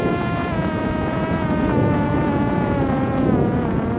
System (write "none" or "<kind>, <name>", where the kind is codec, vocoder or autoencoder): vocoder, Vocos